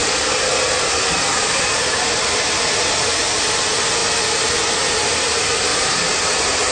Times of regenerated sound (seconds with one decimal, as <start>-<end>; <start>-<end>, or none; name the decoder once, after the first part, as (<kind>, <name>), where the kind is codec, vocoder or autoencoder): 0.0-3.0 (vocoder, BigVGAN v2); 5.7-6.7